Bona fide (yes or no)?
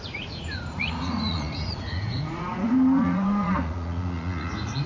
no